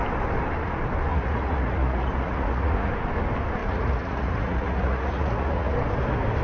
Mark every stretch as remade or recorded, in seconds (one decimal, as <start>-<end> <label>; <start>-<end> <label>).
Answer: 0.0-1.1 recorded; 1.1-2.9 remade; 2.9-3.6 recorded; 3.6-5.7 remade; 5.7-6.4 recorded